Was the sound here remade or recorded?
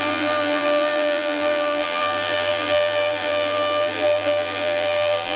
remade